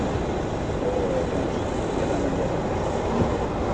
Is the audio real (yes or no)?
yes